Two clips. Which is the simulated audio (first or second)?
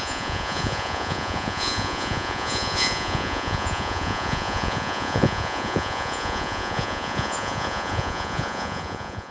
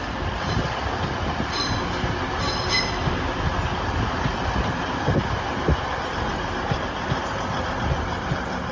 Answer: first